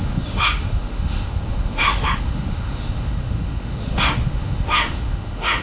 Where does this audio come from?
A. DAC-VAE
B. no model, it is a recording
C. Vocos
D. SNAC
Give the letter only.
A